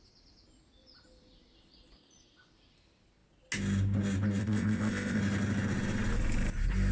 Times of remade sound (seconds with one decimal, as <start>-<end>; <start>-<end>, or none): 4.4-5.2